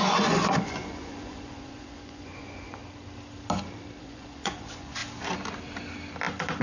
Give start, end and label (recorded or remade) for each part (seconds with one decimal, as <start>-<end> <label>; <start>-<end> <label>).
0.0-2.8 remade; 2.8-4.0 recorded; 4.0-5.0 remade; 5.0-6.6 recorded